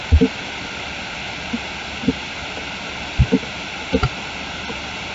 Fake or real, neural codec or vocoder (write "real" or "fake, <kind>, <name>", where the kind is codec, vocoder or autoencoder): real